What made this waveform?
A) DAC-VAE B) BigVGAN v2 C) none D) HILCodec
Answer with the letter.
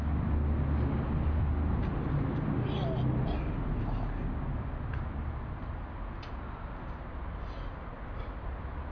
C